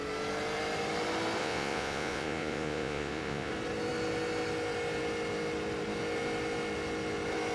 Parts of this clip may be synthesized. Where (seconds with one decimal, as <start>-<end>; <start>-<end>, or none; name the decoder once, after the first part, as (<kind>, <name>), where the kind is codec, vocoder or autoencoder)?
1.4-3.5 (vocoder, Vocos)

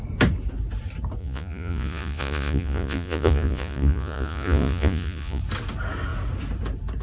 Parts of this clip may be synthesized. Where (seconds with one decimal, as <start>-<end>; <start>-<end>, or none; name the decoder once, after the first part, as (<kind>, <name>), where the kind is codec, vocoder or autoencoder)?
1.2-5.4 (vocoder, Vocos)

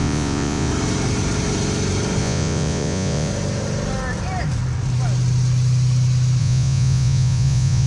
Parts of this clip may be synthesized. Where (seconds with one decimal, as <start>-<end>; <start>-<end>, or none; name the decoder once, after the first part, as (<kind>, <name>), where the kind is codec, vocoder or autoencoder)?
0.0-0.7 (vocoder, Vocos); 2.2-3.3; 6.4-7.9

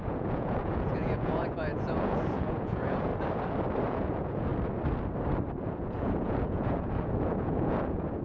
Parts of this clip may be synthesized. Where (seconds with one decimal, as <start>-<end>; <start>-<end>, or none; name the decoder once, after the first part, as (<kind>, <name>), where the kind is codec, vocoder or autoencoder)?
0.0-3.1 (vocoder, Vocos); 3.9-4.5; 5.6-8.2